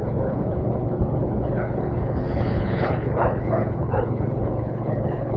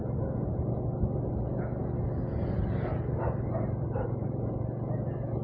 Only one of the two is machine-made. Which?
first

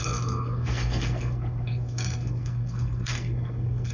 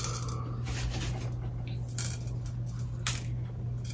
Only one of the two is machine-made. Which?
first